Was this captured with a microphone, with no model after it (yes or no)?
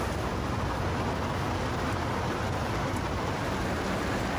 yes